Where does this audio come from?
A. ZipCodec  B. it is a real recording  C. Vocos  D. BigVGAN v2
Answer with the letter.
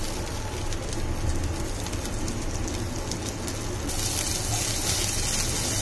B